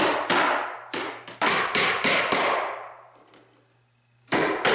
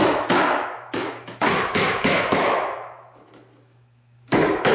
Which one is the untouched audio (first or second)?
first